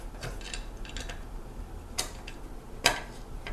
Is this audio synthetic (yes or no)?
no